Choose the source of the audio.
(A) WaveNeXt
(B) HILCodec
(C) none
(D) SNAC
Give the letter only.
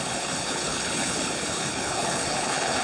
B